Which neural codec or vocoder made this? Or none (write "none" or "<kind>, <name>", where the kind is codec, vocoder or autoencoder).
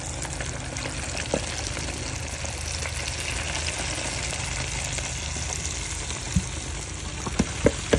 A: none